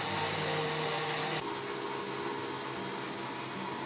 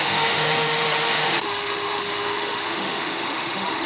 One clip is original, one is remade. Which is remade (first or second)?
second